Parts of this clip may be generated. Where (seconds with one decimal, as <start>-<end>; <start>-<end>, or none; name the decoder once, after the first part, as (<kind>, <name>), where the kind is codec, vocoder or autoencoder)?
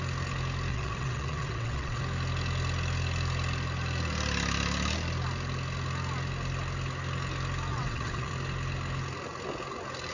0.7-2.0 (vocoder, WaveNeXt); 7.7-8.3